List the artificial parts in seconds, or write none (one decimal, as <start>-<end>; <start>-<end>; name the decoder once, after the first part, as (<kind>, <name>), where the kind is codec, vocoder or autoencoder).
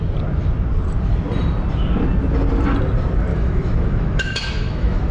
3.3-5.1 (autoencoder, DAC-VAE)